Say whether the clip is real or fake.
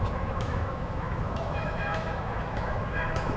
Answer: fake